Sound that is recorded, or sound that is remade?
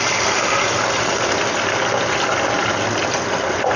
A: recorded